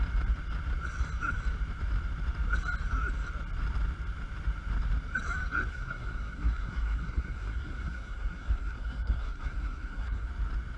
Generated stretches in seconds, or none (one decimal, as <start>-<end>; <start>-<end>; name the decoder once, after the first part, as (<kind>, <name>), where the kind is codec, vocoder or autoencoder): 5.7-10.3 (codec, SNAC)